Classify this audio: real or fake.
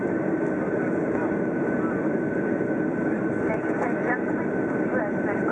real